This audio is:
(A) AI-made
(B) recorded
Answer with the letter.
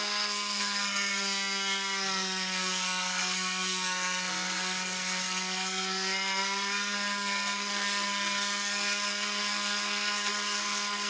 A